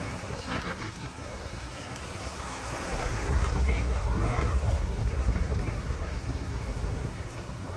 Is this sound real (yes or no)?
no